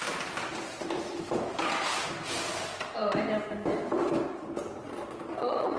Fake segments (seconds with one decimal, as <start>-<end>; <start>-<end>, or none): 4.8-5.8